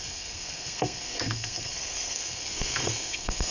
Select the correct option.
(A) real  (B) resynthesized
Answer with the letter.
B